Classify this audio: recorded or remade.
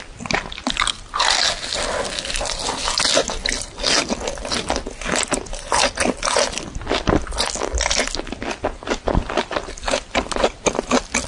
recorded